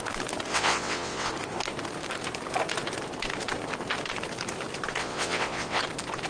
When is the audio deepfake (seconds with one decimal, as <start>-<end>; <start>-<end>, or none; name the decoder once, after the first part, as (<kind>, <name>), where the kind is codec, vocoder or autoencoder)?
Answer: 0.5-1.3 (vocoder, WaveNeXt); 5.0-5.8